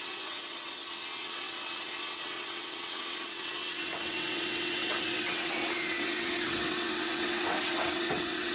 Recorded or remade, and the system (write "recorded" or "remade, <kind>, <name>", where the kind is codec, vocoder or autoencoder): remade, vocoder, WaveNeXt